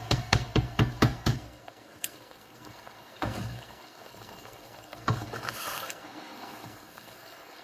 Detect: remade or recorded remade